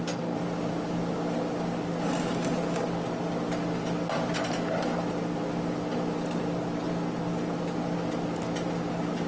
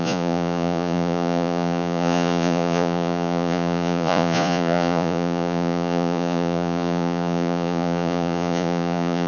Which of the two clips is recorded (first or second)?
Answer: first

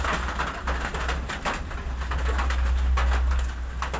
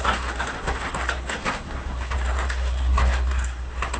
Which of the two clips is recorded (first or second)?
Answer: first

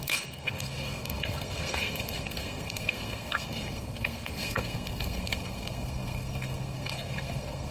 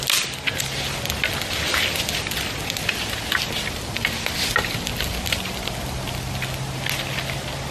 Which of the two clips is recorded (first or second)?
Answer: second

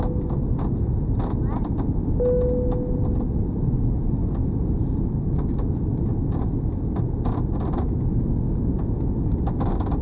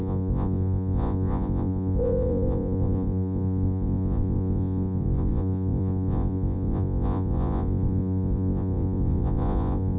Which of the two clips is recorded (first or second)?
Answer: first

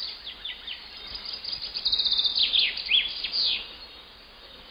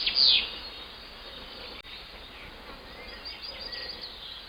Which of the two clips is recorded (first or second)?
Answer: second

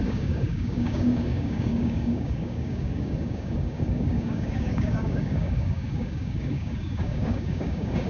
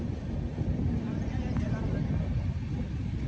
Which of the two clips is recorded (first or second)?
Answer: second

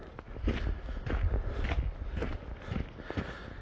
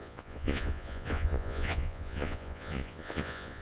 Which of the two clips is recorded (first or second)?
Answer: first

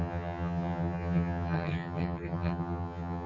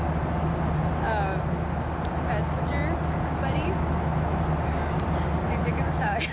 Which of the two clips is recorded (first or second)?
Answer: second